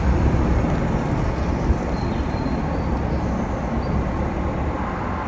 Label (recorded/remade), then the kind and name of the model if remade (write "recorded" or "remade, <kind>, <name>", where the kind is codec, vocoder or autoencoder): recorded